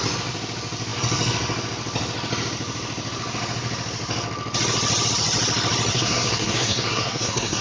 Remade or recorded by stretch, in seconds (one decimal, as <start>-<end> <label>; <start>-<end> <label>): 0.0-5.9 recorded; 5.9-7.6 remade

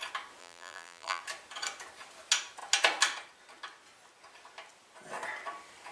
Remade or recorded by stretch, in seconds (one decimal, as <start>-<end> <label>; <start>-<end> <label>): 0.0-0.4 recorded; 0.4-1.2 remade; 1.2-5.9 recorded